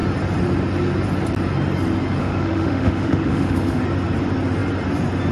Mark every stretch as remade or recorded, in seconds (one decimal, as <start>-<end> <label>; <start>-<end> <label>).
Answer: 0.0-2.2 recorded; 2.2-3.8 remade; 3.8-5.3 recorded

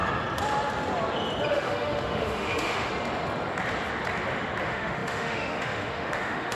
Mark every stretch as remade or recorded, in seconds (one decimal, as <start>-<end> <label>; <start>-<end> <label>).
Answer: 0.0-1.5 recorded; 1.5-2.9 remade; 2.9-4.6 recorded; 4.6-6.5 remade

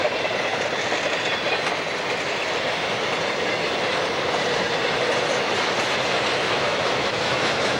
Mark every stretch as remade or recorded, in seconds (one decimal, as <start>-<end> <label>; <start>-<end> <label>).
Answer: 0.0-6.4 recorded; 6.4-7.8 remade

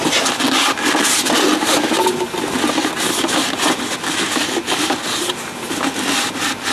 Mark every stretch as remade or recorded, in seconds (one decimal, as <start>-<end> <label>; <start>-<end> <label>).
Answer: 0.0-6.7 recorded